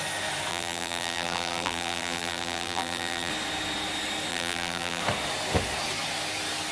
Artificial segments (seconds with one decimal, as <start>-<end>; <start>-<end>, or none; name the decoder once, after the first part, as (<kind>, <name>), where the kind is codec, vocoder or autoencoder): 0.5-3.3 (vocoder, BigVGAN v2); 4.3-5.0